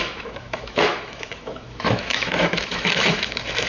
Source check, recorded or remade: remade